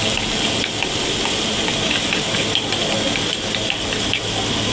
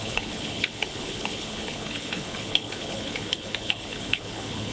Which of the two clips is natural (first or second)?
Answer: first